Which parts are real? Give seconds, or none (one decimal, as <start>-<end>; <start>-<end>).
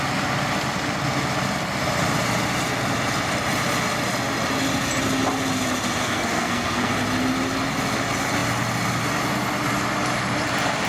0.0-6.0; 6.9-10.9